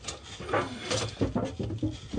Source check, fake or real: real